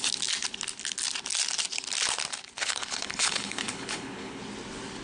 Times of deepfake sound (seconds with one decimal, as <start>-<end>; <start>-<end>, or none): 2.6-4.4